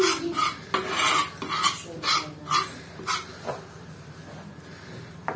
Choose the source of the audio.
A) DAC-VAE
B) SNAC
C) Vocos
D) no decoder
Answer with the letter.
D